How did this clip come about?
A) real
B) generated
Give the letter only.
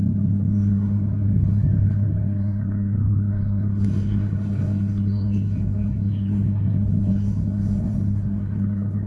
B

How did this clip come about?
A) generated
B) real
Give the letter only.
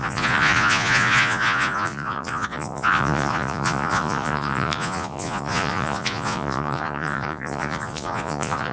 A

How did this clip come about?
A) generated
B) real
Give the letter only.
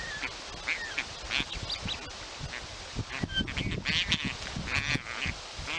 B